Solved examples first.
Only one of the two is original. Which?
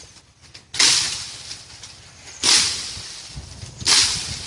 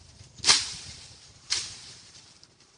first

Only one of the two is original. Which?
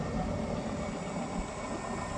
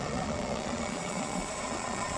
first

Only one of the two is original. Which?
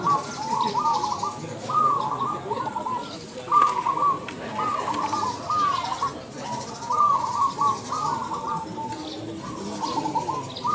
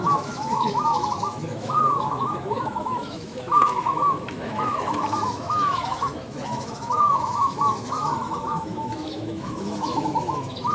first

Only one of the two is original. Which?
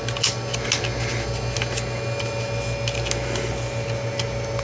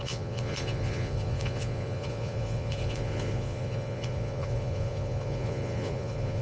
first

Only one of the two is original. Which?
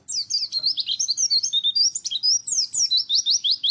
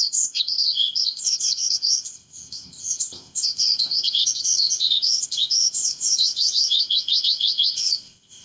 first